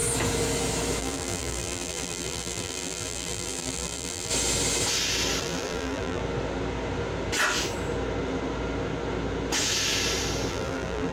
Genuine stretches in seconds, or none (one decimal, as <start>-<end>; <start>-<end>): 0.0-1.0; 4.3-5.4; 6.2-10.5